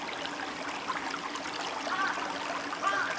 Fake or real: real